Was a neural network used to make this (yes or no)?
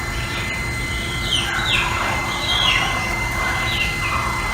no